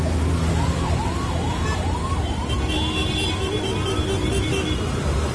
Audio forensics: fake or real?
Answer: real